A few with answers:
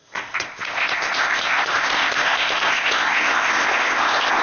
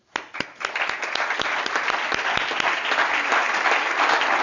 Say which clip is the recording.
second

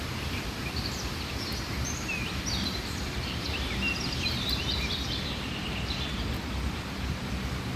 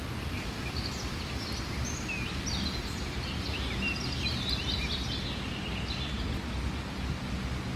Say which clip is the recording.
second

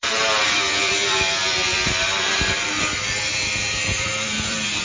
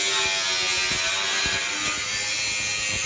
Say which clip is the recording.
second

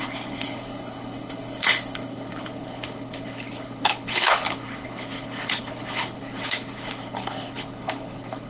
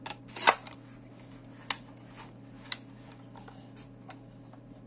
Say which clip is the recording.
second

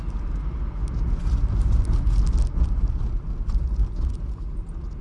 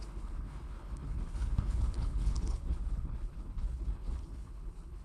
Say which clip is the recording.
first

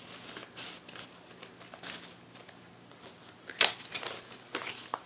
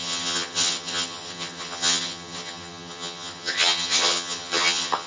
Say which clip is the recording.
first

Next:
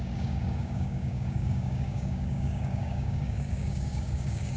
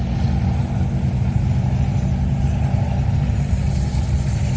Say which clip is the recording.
second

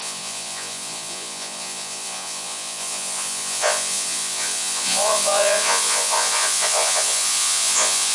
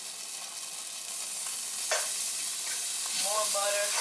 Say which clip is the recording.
second